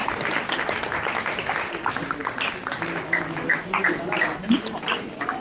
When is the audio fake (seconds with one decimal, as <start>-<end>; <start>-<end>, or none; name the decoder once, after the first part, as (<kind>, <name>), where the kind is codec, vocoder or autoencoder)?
none